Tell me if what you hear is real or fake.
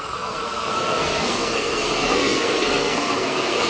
fake